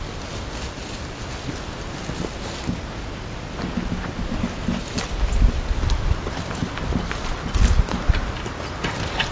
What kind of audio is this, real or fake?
real